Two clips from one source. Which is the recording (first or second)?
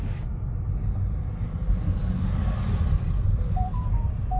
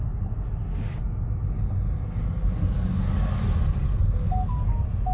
second